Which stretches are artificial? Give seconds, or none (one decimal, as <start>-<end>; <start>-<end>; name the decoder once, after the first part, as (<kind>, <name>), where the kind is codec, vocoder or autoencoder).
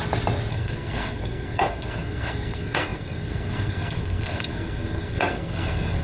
0.5-6.0 (codec, SNAC)